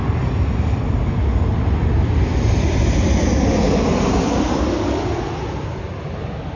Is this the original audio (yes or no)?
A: yes